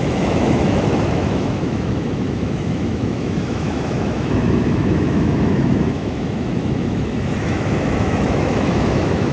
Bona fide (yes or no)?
no